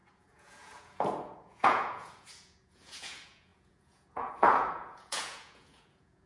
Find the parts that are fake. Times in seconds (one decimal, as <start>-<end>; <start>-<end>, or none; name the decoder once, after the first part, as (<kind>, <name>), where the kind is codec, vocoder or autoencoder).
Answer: 0.0-6.3 (vocoder, Vocos)